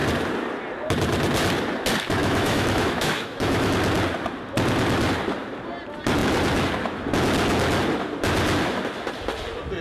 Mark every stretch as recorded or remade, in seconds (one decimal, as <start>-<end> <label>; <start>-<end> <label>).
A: 0.0-2.2 recorded; 2.2-3.7 remade; 3.7-9.8 recorded